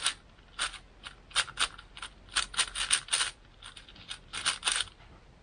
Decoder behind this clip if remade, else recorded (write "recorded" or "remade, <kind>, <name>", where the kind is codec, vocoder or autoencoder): recorded